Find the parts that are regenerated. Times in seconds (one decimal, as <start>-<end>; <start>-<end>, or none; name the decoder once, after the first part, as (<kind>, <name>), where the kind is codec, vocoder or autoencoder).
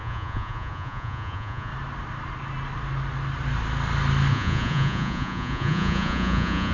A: 0.0-1.7 (vocoder, Vocos); 4.3-6.7